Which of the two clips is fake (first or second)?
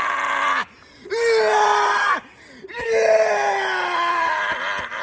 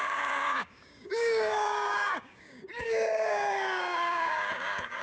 second